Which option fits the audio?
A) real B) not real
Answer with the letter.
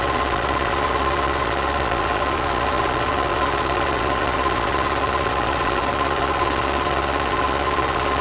B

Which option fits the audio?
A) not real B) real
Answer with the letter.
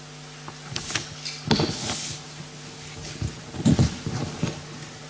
B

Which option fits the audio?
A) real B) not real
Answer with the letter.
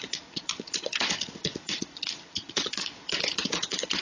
B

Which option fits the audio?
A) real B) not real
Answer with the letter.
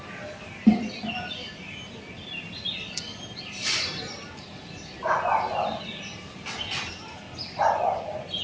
A